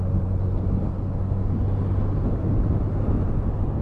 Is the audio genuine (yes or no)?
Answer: yes